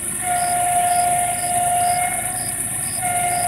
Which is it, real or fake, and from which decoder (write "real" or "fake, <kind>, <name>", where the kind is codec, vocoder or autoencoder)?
real